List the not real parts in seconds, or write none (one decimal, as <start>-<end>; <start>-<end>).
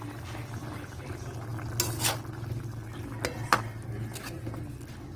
none